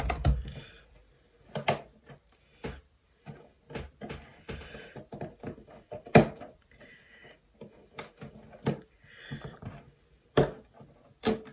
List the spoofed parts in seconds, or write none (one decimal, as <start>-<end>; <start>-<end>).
4.3-6.9